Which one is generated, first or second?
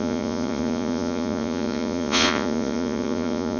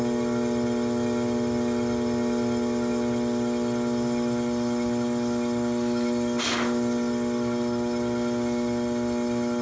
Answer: first